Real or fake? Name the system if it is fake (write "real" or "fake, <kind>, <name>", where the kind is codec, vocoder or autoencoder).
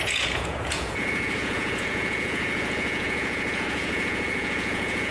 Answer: fake, vocoder, Vocos